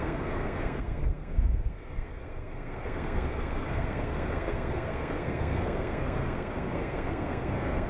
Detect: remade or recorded remade